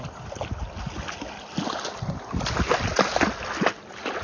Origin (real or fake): real